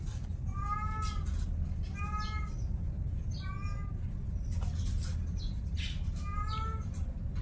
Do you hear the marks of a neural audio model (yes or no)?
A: no